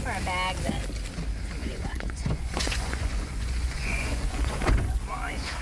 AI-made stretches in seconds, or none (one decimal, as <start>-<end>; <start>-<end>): 1.6-5.0